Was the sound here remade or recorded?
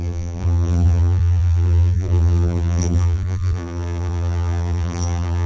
remade